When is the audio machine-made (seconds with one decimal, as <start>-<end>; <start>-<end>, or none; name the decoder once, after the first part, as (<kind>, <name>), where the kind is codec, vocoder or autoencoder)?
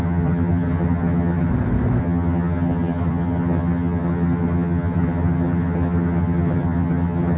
0.0-1.5 (vocoder, HiFi-GAN); 2.0-7.4